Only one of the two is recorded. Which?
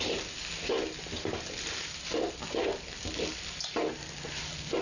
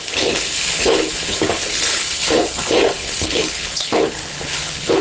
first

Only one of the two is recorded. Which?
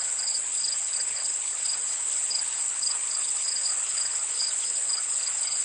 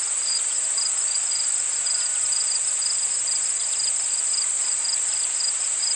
second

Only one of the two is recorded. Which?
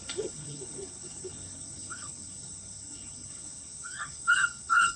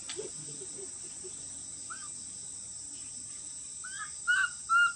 second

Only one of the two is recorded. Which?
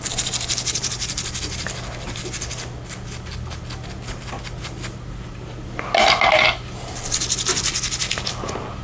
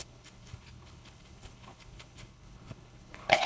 first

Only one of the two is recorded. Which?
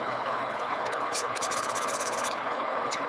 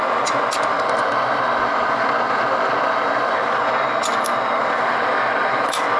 second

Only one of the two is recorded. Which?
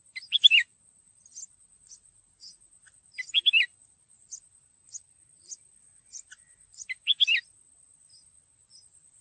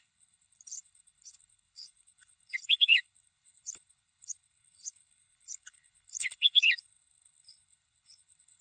first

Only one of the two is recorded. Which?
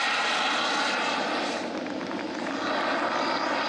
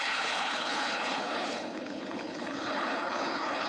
first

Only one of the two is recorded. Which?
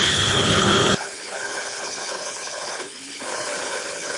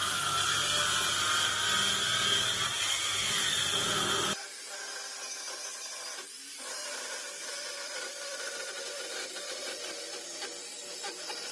second